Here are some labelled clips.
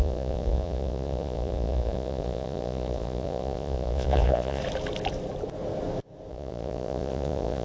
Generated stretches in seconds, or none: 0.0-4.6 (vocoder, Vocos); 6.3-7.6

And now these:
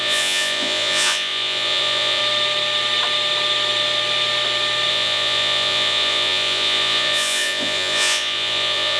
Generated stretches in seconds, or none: 0.0-2.2 (vocoder, Vocos); 4.9-9.0

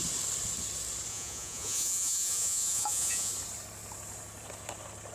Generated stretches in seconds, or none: 1.1-3.3 (vocoder, Vocos)

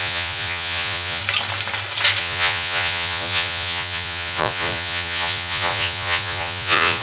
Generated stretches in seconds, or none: 0.0-1.2 (vocoder, Vocos); 2.2-7.0

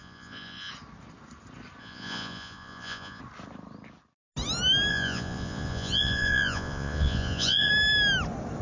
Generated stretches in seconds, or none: 0.0-0.7 (vocoder, Vocos); 1.8-3.2; 4.9-7.7

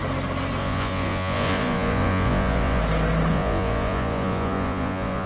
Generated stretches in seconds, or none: 0.6-2.8 (vocoder, Vocos); 3.3-5.3